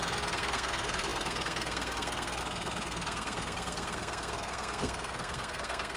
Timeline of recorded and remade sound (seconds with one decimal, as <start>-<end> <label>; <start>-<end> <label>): 0.0-6.0 remade